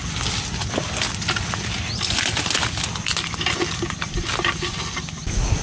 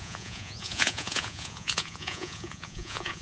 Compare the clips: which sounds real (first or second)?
first